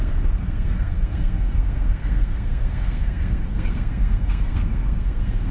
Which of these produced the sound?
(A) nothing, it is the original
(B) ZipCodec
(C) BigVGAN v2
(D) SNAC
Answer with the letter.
D